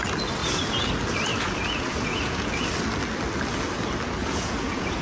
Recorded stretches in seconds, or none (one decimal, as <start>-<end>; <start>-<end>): 0.0-0.4; 0.9-1.3; 2.6-4.2